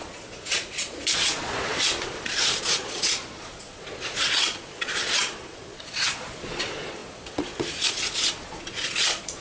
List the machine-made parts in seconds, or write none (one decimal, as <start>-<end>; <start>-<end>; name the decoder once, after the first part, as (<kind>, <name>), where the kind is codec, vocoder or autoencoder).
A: 0.0-9.4 (vocoder, Vocos)